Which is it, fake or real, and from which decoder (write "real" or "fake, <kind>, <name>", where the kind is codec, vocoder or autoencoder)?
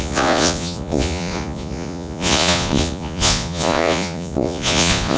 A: fake, vocoder, Vocos